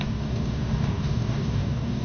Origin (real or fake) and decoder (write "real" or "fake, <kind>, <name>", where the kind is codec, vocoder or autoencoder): fake, codec, DAC